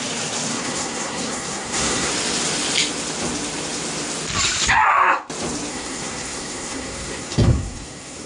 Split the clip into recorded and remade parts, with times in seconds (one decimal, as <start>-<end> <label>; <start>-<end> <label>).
0.0-0.5 recorded; 0.5-2.1 remade; 2.1-5.7 recorded; 5.7-8.3 remade